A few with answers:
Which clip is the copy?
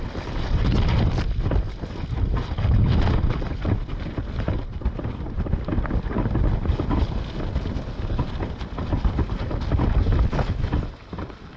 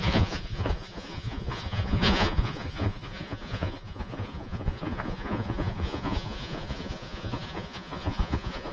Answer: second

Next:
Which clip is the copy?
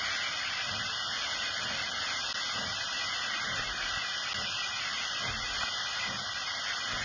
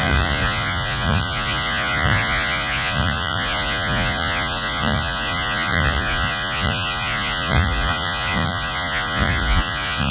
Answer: second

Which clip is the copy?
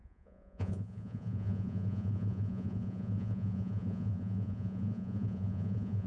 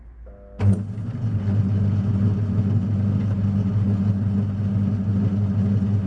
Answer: first